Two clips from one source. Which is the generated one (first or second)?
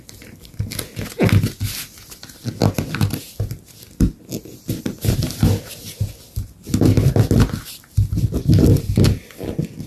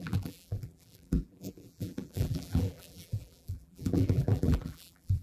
second